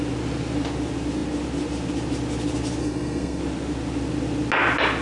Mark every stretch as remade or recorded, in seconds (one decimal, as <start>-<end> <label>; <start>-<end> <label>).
0.0-2.8 recorded; 2.8-3.4 remade; 3.4-5.0 recorded